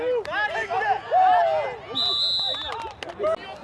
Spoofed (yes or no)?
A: no